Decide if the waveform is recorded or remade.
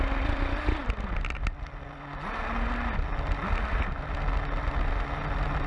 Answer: recorded